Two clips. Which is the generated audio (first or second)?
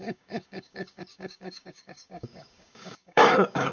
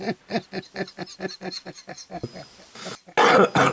first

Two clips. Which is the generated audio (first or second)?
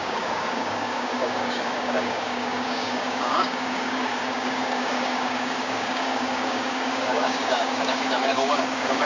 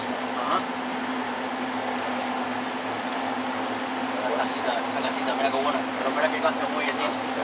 first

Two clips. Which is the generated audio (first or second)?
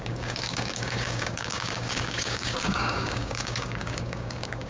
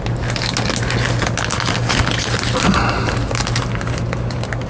first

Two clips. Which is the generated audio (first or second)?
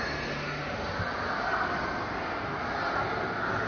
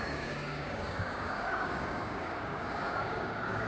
second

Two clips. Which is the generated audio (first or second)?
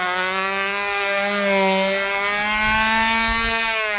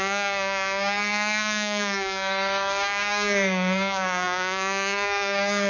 second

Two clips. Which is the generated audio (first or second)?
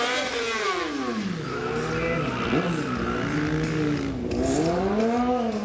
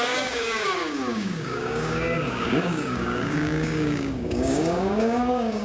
second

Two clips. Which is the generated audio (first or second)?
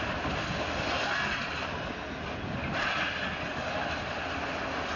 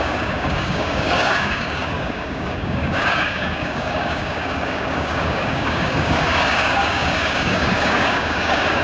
second